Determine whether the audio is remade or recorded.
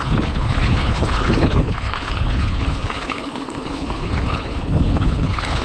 remade